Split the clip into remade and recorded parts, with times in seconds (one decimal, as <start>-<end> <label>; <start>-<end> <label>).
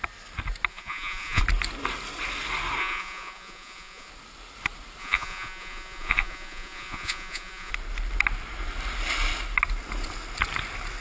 0.0-0.7 recorded; 0.7-1.4 remade; 1.4-2.8 recorded; 2.8-4.1 remade; 4.1-5.0 recorded; 5.0-7.7 remade; 7.7-11.0 recorded